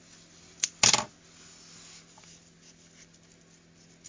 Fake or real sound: real